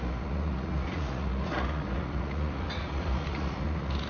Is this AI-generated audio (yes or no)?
yes